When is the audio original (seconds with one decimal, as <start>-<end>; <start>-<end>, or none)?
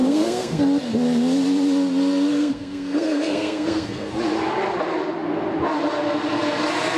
0.6-2.3; 4.1-7.0